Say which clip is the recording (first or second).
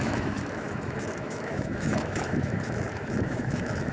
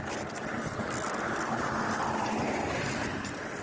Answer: second